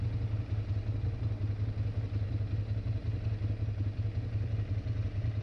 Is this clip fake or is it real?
real